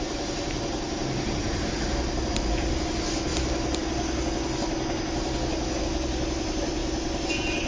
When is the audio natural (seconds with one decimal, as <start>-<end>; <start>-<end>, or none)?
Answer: 0.0-7.7